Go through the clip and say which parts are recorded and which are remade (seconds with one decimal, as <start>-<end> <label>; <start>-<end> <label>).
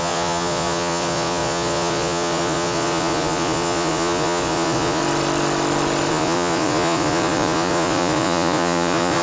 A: 0.0-5.0 remade; 5.0-6.1 recorded; 6.1-9.2 remade